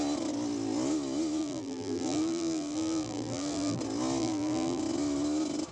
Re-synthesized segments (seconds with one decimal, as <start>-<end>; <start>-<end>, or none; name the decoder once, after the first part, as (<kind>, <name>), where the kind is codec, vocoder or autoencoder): 1.4-3.8 (vocoder, BigVGAN v2); 4.2-4.8